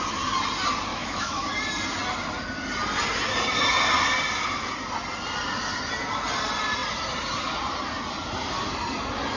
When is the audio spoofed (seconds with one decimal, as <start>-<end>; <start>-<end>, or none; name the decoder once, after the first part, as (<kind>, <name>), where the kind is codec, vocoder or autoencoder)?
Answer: 0.9-1.5 (autoencoder, DAC-VAE)